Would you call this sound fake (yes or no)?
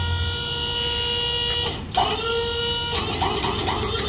no